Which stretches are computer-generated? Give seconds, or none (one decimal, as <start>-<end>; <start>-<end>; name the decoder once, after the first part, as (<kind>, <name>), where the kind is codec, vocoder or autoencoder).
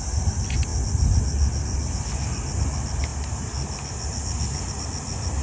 none